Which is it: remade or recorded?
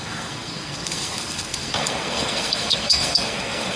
remade